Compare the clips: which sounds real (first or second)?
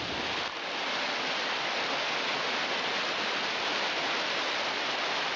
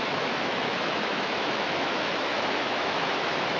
first